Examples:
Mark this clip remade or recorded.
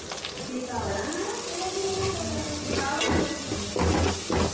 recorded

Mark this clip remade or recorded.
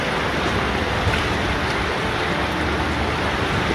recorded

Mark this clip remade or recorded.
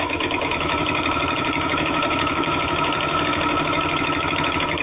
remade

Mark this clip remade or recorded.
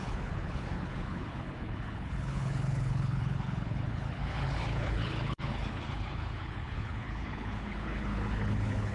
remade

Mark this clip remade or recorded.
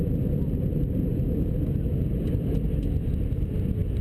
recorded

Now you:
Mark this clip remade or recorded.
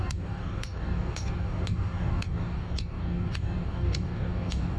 remade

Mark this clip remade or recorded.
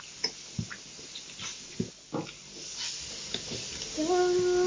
recorded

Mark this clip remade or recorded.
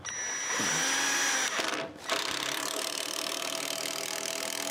recorded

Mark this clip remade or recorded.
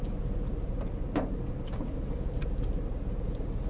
recorded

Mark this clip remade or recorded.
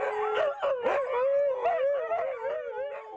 recorded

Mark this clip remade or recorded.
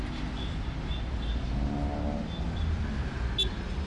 recorded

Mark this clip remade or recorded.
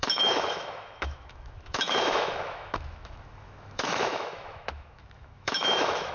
remade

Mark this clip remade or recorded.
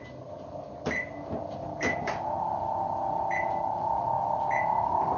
recorded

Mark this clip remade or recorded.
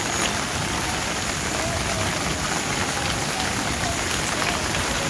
recorded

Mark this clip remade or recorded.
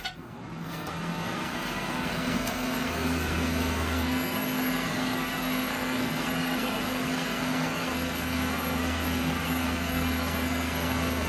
remade